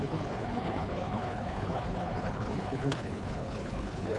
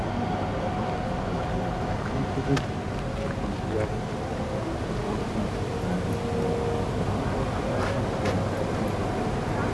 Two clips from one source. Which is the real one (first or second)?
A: second